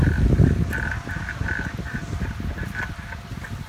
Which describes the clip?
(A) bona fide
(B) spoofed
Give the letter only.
B